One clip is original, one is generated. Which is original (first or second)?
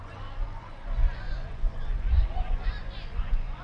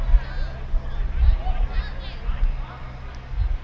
second